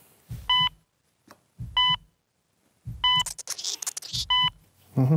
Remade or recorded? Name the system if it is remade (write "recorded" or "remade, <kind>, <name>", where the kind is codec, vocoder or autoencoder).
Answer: recorded